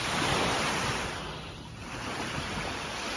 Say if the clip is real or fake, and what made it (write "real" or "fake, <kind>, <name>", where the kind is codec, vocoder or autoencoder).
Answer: real